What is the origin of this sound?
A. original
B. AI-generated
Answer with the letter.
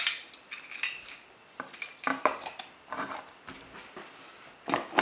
A